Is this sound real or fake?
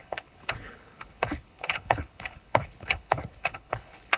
fake